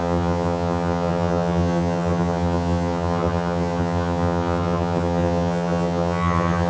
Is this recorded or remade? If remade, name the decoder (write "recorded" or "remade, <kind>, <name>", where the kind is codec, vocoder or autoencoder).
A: remade, vocoder, HiFi-GAN